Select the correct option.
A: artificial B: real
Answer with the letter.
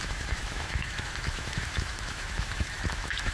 A